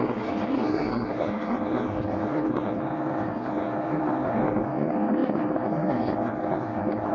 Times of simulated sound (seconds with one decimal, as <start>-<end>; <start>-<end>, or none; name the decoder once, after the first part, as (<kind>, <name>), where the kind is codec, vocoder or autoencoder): 0.0-7.1 (codec, SNAC)